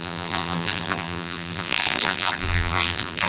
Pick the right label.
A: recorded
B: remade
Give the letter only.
B